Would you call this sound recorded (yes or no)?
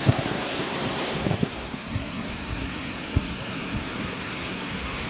no